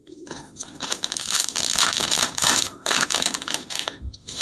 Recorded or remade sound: remade